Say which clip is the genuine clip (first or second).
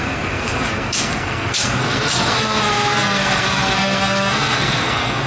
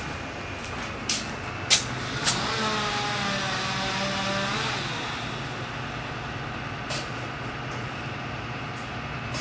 second